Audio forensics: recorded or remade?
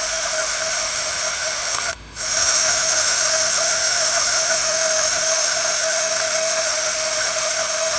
remade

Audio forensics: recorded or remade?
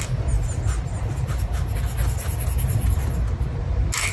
recorded